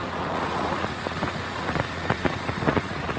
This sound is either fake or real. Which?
fake